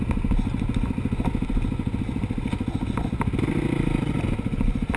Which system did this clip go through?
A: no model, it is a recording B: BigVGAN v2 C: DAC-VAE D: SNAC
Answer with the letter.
A